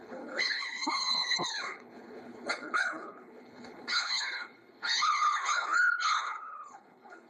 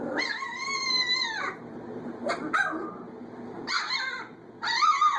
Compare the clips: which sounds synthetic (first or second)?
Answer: first